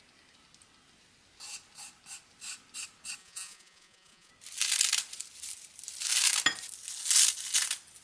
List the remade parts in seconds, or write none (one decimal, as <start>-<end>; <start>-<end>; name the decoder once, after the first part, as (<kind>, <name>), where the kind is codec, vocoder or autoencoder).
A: 3.2-4.3 (vocoder, Vocos)